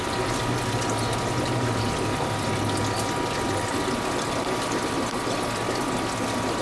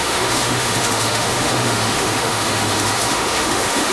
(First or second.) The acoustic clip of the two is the first